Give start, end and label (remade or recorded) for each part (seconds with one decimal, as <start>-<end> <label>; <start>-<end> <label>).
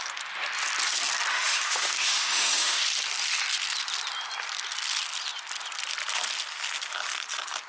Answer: 0.0-1.3 recorded; 1.3-2.8 remade; 2.8-7.7 recorded